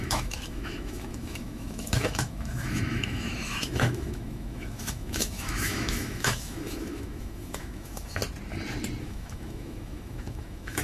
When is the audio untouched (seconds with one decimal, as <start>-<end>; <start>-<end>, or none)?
8.2-9.0